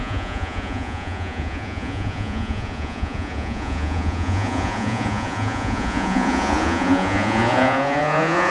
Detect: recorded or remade remade